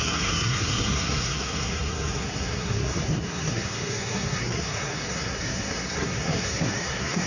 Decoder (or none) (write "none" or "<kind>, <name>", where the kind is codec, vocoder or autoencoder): codec, SNAC